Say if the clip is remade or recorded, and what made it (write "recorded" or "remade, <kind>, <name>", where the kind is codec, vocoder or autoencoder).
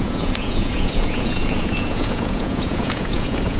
remade, vocoder, Vocos